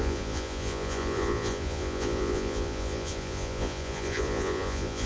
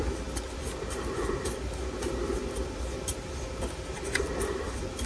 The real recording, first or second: second